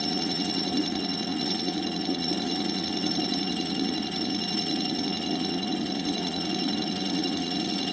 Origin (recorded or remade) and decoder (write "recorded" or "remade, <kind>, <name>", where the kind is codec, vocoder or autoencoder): remade, vocoder, Vocos